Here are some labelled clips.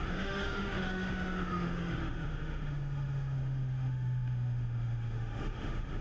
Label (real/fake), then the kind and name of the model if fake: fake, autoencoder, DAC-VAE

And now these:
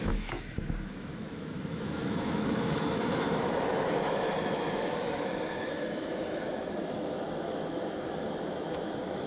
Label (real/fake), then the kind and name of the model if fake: fake, autoencoder, DAC-VAE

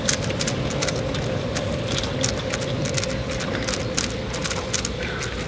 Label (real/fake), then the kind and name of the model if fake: real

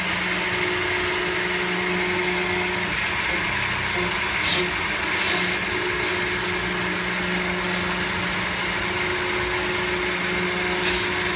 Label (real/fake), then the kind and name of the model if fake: real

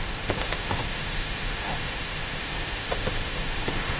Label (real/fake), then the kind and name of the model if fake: fake, autoencoder, DAC-VAE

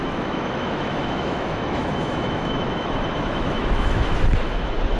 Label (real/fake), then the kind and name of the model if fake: fake, autoencoder, DAC-VAE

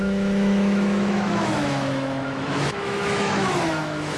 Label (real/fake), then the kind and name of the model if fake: fake, autoencoder, DAC-VAE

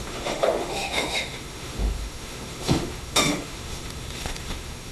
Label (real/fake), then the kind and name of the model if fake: fake, autoencoder, DAC-VAE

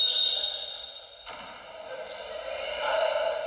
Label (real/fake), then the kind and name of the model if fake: real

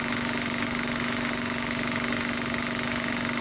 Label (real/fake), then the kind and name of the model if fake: fake, autoencoder, DAC-VAE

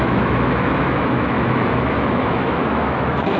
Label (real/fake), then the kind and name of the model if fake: fake, autoencoder, DAC-VAE